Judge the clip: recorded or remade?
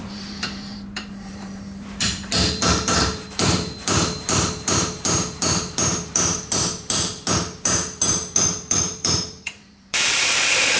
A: remade